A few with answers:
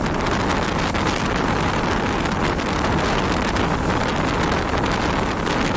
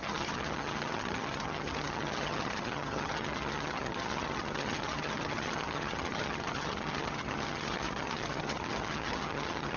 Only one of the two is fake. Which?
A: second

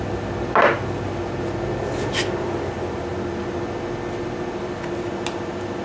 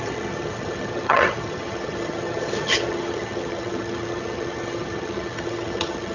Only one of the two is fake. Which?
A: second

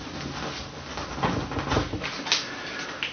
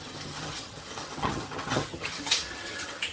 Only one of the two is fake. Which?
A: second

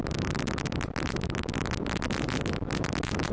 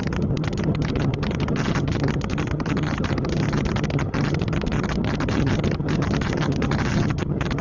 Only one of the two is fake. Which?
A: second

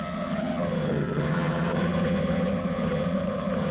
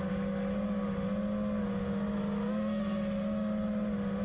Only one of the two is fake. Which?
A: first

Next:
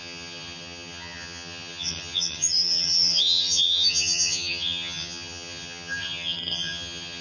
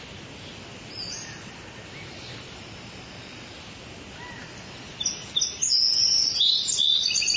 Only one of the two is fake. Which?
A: first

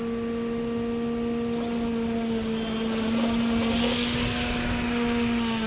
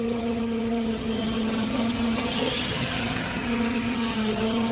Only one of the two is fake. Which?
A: second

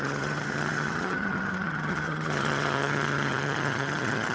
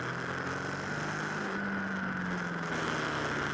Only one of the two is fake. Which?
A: first